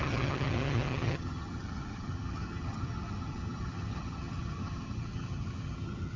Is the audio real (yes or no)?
no